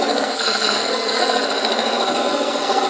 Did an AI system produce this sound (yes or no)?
yes